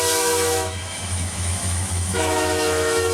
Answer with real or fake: fake